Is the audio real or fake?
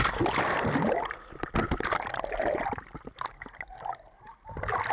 real